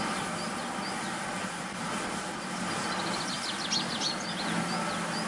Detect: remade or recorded recorded